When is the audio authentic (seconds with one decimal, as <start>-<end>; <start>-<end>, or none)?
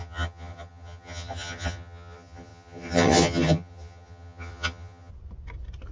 5.1-5.9